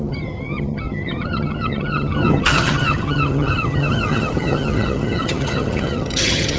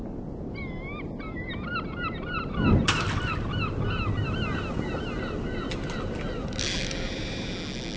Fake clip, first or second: first